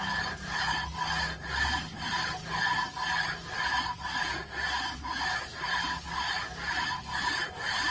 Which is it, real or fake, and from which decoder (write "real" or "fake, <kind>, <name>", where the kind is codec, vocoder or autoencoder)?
real